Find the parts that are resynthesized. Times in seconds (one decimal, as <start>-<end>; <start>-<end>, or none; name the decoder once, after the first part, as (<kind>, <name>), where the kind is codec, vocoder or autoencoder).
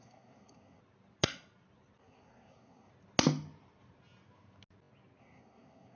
0.0-0.8 (codec, SNAC); 2.0-2.9; 5.2-6.0